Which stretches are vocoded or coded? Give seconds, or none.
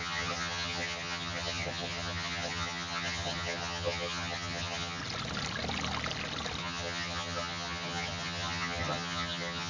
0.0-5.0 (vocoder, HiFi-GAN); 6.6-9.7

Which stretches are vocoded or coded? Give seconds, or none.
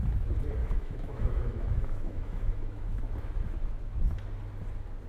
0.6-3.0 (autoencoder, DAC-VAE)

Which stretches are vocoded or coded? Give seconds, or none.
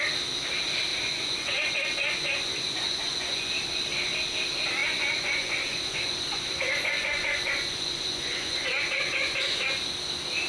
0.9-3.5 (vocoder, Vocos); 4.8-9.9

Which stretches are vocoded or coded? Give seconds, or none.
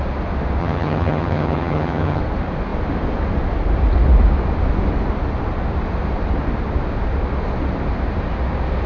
0.6-2.2 (vocoder, HiFi-GAN)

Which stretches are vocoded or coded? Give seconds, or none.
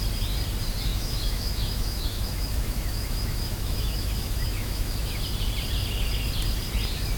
0.9-5.2 (autoencoder, DAC-VAE)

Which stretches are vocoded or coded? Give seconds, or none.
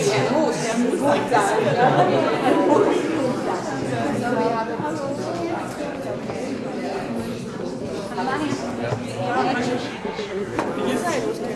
9.6-10.6 (codec, SNAC)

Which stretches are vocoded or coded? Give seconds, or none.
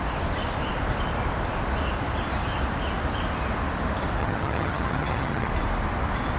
4.2-5.5 (vocoder, HiFi-GAN)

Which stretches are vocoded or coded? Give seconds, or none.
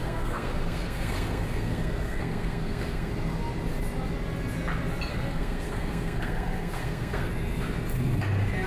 0.0-3.1 (codec, SNAC); 5.1-7.3